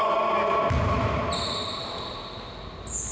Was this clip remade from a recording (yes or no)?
no